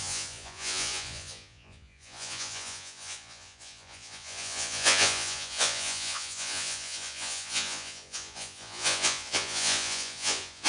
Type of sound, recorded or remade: remade